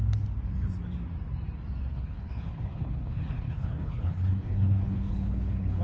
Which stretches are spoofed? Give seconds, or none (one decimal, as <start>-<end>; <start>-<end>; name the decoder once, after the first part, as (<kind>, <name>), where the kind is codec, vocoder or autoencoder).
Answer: 1.9-5.8 (codec, HILCodec)